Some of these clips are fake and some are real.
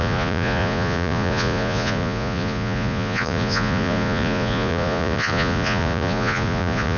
fake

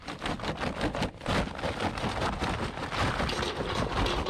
real